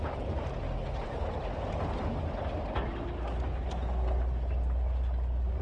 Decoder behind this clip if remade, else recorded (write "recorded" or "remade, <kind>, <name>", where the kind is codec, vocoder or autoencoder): recorded